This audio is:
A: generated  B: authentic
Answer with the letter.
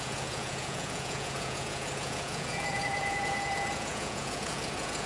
A